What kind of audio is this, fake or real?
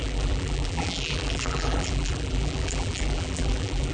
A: fake